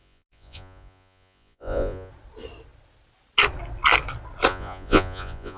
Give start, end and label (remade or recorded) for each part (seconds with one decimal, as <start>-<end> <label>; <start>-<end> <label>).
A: 0.0-2.1 remade; 2.1-4.5 recorded; 4.5-5.6 remade